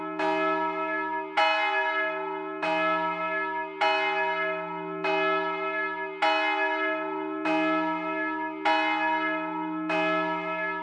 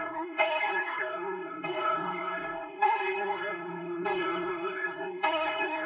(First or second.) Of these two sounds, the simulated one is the second